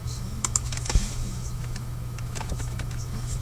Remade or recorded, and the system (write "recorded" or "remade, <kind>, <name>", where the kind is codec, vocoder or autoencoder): remade, autoencoder, DAC-VAE